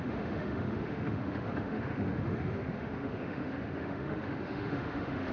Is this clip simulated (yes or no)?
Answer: yes